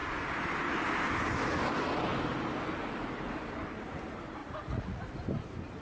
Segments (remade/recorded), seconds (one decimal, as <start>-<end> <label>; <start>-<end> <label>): 0.0-4.4 recorded; 4.4-5.0 remade; 5.0-5.8 recorded